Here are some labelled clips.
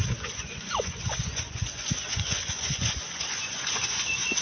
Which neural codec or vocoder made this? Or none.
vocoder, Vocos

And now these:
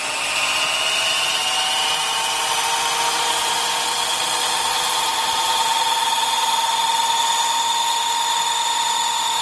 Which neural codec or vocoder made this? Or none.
none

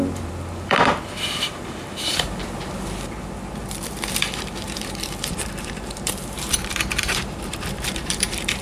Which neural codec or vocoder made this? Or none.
vocoder, BigVGAN v2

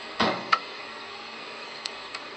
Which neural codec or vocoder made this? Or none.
codec, SNAC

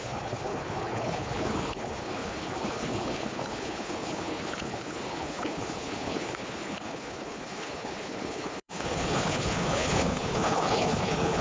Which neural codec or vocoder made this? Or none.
codec, HILCodec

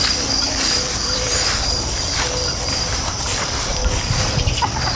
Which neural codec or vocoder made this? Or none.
vocoder, BigVGAN v2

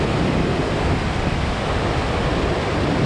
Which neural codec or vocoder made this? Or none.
vocoder, BigVGAN v2